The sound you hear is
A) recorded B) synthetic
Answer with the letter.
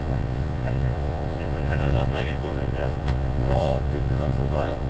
B